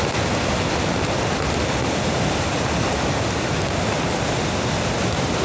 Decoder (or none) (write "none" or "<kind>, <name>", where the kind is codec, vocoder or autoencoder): none